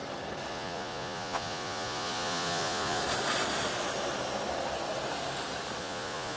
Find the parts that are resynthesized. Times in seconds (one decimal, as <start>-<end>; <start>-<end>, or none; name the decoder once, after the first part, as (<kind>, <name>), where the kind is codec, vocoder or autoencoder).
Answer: 0.5-3.0 (vocoder, Vocos); 5.8-6.4